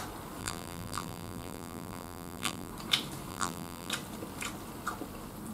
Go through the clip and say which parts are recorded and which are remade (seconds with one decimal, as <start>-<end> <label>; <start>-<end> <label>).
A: 0.0-0.4 recorded; 0.4-2.7 remade; 2.7-3.3 recorded; 3.3-3.9 remade; 3.9-5.5 recorded